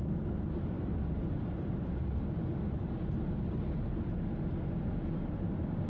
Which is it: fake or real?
real